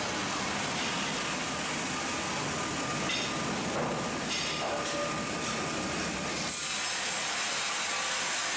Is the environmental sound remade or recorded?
recorded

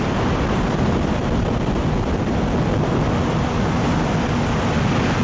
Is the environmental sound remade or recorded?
recorded